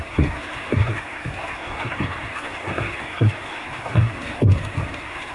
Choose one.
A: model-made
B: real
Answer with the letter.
A